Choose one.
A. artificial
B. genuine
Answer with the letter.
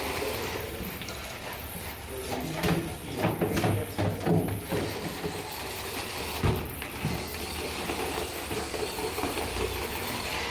B